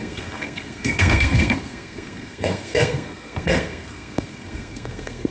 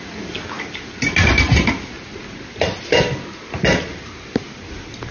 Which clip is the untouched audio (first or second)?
second